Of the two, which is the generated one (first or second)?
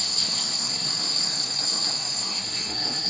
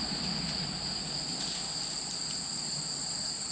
first